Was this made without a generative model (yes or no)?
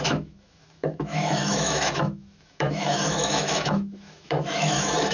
no